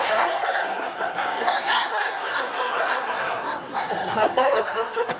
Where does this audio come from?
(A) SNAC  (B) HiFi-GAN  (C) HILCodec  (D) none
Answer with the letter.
A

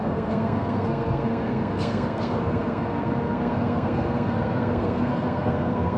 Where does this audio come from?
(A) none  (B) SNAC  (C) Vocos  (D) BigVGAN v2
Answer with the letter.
B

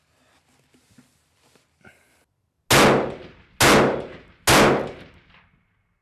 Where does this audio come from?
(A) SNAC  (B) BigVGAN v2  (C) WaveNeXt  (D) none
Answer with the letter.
D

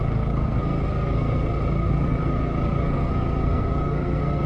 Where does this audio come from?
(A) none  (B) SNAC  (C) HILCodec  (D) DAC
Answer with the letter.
B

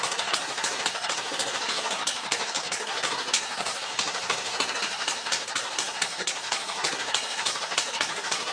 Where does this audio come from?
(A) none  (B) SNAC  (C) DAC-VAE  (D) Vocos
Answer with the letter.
B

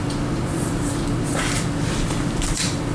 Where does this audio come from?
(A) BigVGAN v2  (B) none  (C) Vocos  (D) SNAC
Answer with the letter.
B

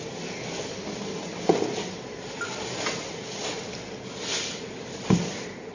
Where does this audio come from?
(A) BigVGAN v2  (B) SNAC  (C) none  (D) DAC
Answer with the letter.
C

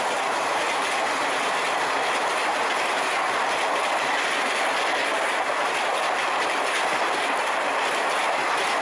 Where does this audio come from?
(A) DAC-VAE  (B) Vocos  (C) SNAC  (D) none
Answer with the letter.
D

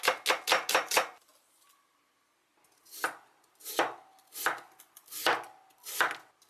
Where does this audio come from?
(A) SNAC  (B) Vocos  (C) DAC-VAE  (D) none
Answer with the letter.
D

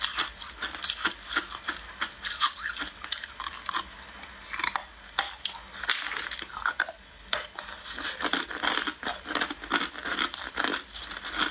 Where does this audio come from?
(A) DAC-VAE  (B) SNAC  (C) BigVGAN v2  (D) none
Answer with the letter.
D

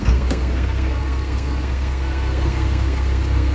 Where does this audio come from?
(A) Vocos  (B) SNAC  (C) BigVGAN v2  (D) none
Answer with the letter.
B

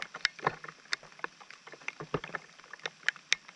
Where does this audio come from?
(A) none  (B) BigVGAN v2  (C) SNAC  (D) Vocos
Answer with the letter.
A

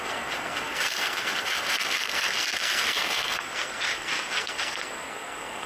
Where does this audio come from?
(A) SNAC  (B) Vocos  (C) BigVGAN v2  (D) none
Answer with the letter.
A